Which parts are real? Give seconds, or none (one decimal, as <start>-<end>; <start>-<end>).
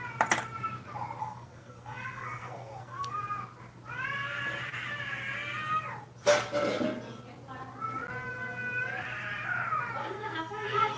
0.0-1.2; 3.2-10.0